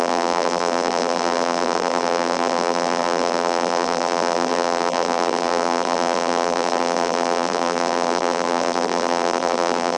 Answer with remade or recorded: remade